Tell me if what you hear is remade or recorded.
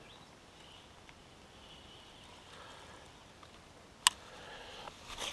recorded